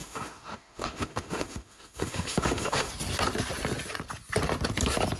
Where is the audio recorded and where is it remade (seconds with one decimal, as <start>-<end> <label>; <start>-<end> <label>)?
0.0-2.9 remade; 2.9-5.2 recorded